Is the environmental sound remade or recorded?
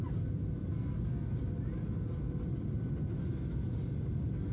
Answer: recorded